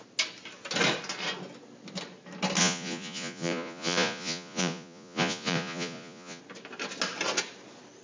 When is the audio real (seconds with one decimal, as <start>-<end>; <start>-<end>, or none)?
0.0-2.6; 6.4-8.0